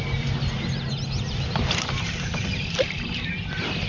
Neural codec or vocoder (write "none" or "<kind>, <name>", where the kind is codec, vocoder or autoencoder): none